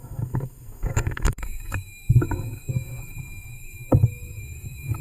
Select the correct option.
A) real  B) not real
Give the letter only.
B